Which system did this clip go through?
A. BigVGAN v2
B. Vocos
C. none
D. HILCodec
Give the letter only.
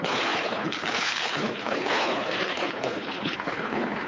D